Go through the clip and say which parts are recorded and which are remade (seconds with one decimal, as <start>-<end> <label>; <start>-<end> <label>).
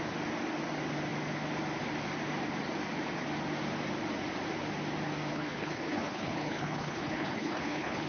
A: 0.0-5.3 recorded; 5.3-8.1 remade